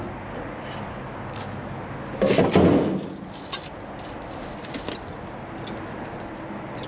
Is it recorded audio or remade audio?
recorded